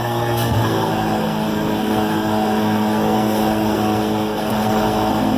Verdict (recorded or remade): remade